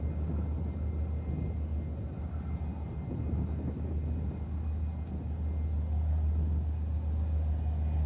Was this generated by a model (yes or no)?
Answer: no